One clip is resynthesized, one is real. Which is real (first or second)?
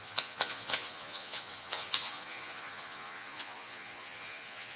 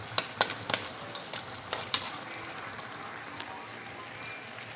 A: second